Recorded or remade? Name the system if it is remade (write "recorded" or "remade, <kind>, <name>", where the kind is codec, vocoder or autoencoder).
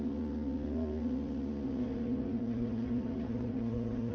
remade, vocoder, Vocos